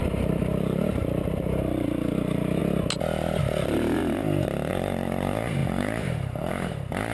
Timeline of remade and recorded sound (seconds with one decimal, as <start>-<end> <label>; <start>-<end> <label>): 0.0-2.6 remade; 2.6-3.4 recorded; 3.4-4.0 remade; 4.0-4.7 recorded; 4.7-7.1 remade